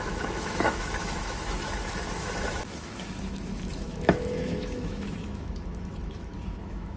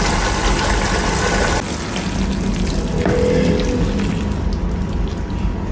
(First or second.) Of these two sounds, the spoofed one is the first